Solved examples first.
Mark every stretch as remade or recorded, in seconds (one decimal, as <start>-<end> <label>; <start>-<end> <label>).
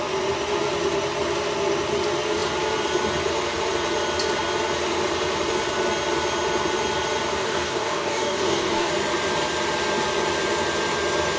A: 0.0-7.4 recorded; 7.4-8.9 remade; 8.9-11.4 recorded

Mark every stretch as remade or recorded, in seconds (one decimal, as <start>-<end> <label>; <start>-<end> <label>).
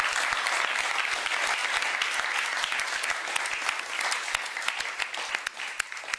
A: 0.0-6.2 recorded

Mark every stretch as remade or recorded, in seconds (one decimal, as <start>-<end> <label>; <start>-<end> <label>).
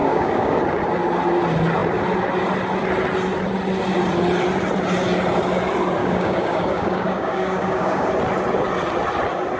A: 0.0-0.6 remade; 0.6-6.0 recorded; 6.0-8.1 remade; 8.1-9.6 recorded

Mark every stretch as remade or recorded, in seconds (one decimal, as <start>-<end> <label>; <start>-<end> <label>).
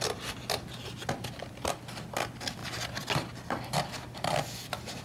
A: 0.0-5.0 recorded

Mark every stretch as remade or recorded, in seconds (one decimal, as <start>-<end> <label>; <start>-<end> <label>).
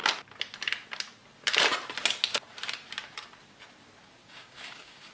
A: 0.0-4.2 recorded; 4.2-5.1 remade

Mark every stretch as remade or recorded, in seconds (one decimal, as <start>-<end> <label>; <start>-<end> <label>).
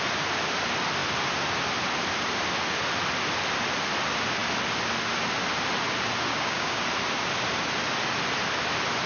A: 0.0-6.3 recorded; 6.3-6.8 remade; 6.8-9.1 recorded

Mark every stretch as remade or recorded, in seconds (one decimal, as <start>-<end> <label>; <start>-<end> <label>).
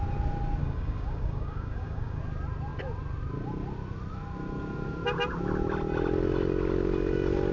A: 0.0-0.6 recorded; 0.6-2.2 remade; 2.2-7.5 recorded